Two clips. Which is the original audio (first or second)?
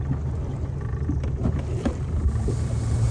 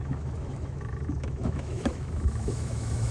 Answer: first